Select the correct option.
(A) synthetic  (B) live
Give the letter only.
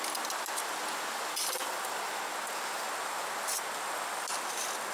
B